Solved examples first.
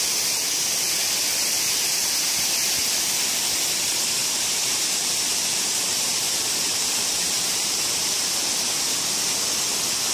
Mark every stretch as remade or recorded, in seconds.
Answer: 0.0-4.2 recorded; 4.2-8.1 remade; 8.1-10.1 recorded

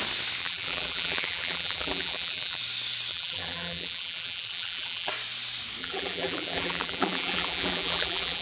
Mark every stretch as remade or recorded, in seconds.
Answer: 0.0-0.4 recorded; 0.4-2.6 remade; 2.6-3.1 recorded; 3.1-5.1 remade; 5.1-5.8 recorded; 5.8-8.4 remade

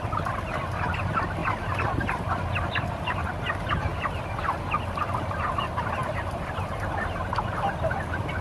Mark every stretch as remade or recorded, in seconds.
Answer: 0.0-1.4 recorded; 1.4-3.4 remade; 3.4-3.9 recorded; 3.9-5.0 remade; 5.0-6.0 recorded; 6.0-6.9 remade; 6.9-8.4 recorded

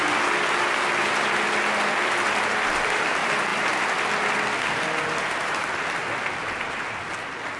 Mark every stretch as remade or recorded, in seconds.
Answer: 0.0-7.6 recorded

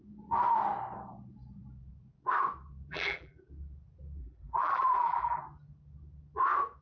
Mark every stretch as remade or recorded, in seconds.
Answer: 0.0-2.9 recorded; 2.9-3.4 remade; 3.4-4.2 recorded; 4.2-5.4 remade; 5.4-6.8 recorded